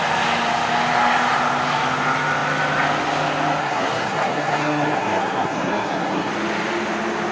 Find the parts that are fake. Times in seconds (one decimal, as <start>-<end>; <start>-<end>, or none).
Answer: 3.6-6.3